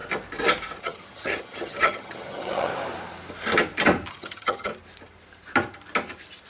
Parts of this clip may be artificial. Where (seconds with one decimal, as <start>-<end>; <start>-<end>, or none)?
0.8-2.7; 4.1-4.7